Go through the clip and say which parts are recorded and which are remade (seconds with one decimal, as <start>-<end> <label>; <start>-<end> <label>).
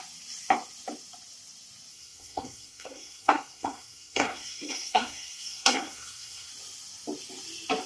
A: 0.0-1.9 recorded; 1.9-6.5 remade; 6.5-7.9 recorded